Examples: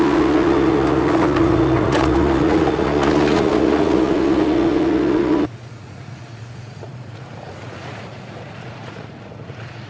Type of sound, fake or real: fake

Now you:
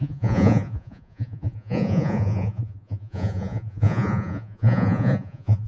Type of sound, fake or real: fake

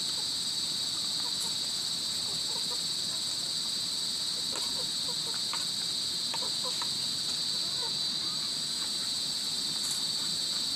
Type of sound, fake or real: real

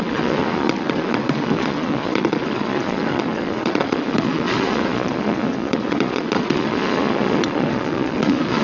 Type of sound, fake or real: fake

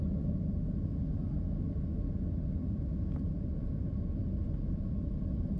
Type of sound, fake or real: real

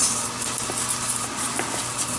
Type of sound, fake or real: real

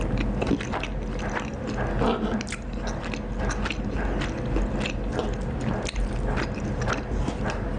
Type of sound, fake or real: real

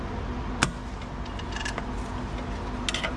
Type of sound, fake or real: real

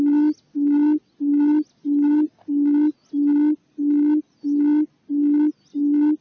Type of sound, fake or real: real